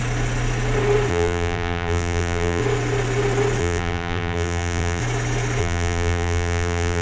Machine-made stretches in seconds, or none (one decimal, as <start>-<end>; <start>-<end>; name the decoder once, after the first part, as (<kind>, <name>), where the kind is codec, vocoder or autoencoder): 1.1-2.6 (vocoder, BigVGAN v2); 3.6-5.0; 5.6-7.0